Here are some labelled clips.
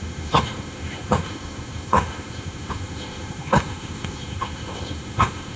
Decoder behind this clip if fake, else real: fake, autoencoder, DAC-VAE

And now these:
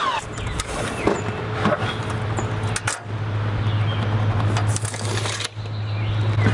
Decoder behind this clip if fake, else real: real